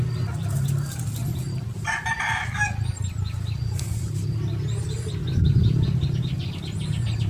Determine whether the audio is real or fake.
real